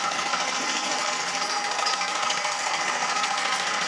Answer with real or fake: fake